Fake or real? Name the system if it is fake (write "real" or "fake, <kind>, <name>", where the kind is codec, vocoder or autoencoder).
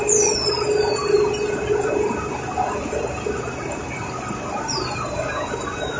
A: real